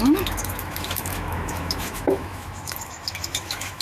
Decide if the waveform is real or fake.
fake